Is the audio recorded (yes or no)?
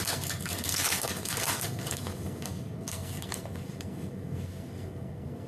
no